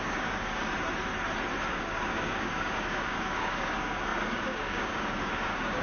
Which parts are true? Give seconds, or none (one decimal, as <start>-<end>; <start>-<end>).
0.6-1.7